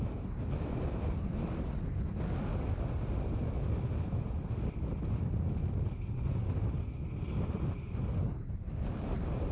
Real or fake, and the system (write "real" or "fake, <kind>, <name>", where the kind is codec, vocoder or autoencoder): real